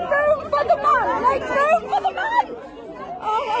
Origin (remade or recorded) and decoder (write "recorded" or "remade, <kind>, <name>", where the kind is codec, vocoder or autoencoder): recorded